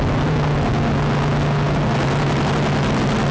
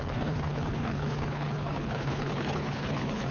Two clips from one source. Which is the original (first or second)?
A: first